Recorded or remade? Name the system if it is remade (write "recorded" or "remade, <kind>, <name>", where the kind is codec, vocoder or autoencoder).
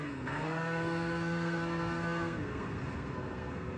remade, codec, SNAC